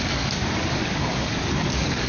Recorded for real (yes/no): no